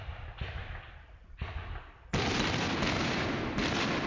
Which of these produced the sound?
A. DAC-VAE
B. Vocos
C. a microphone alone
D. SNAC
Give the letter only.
C